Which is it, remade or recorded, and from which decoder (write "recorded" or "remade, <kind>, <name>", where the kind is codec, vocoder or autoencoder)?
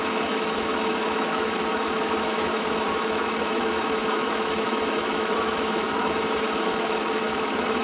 remade, autoencoder, DAC-VAE